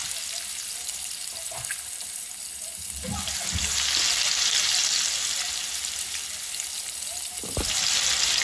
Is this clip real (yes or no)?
yes